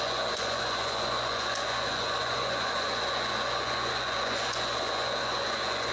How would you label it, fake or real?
fake